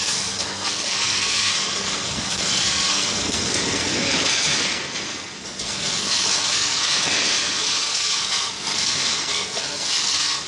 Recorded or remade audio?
remade